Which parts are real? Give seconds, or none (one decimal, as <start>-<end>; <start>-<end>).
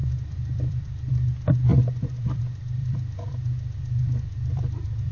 1.1-1.7; 2.4-2.8